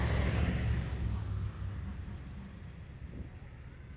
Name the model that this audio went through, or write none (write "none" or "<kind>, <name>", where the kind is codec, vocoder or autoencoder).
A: none